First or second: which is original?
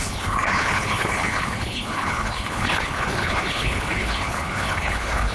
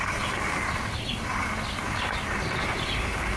second